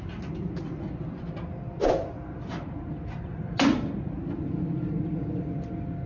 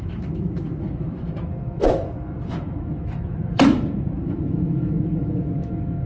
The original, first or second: first